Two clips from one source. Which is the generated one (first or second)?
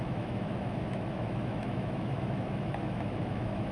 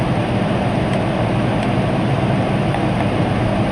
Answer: first